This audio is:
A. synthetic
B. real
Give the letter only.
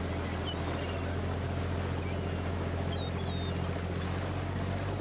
B